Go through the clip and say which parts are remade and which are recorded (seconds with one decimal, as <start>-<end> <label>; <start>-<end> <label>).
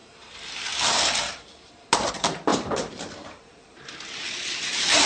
0.0-5.1 remade